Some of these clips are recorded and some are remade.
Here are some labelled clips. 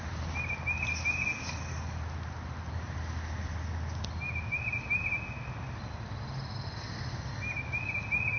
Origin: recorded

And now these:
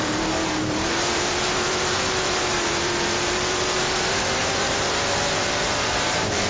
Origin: remade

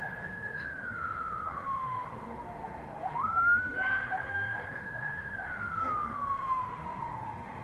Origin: remade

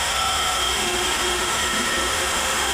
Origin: remade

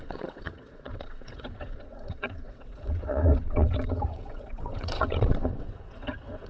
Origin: remade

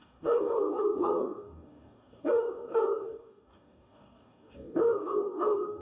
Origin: remade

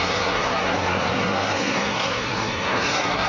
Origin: remade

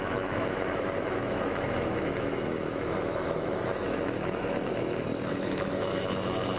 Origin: remade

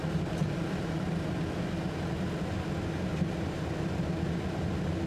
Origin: recorded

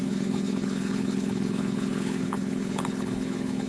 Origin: remade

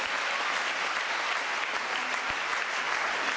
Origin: recorded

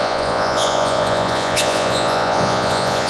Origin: remade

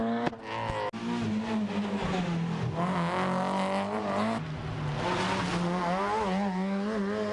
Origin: recorded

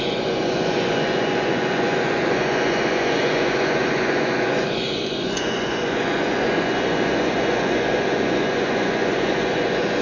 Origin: remade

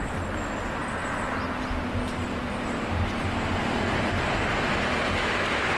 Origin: recorded